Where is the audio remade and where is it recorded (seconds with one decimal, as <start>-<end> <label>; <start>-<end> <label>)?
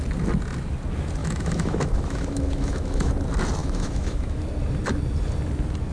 0.0-1.2 recorded; 1.2-3.1 remade; 3.1-3.6 recorded; 3.6-4.4 remade; 4.4-5.9 recorded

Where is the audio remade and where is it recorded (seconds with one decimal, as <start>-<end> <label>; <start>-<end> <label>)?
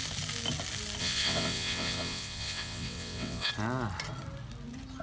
0.0-1.0 recorded; 1.0-3.5 remade; 3.5-5.0 recorded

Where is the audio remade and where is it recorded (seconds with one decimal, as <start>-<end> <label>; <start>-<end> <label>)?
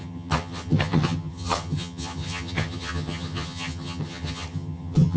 0.0-5.2 remade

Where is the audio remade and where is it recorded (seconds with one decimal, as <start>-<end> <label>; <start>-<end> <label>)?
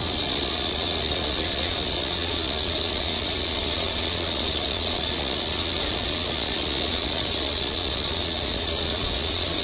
0.0-9.6 remade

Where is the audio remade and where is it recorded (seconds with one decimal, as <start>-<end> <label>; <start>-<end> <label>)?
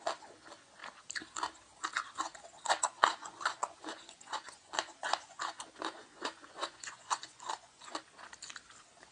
0.0-3.2 recorded; 3.2-5.4 remade; 5.4-6.0 recorded; 6.0-8.0 remade; 8.0-9.1 recorded